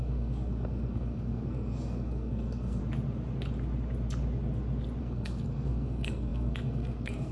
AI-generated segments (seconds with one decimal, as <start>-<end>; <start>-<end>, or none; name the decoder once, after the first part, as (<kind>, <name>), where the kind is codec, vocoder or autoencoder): 0.0-2.8 (codec, SNAC); 5.0-7.3